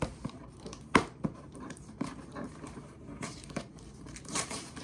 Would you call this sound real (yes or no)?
no